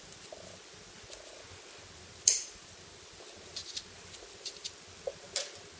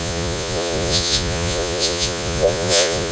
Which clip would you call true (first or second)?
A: first